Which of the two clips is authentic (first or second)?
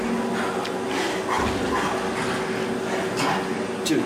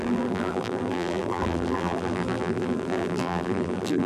first